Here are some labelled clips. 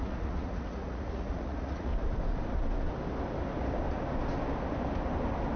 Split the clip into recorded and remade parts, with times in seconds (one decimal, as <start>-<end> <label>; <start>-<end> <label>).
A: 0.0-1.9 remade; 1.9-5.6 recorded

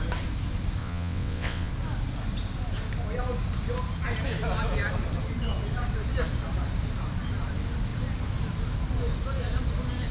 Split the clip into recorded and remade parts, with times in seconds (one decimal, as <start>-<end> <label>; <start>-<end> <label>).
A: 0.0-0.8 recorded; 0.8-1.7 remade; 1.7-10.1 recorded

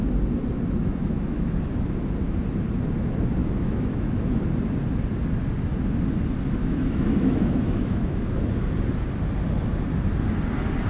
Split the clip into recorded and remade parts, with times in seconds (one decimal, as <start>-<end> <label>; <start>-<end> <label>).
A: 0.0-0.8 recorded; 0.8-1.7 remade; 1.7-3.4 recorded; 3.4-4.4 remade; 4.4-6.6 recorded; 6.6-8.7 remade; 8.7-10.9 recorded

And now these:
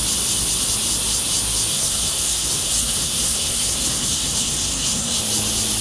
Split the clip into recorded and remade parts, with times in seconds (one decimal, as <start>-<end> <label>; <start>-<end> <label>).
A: 0.0-1.7 recorded; 1.7-5.2 remade; 5.2-5.8 recorded